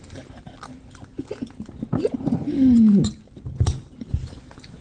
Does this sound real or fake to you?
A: real